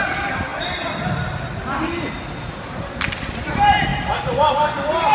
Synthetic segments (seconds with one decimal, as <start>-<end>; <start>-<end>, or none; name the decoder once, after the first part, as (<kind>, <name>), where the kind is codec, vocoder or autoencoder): none